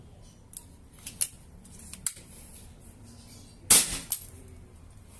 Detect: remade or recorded recorded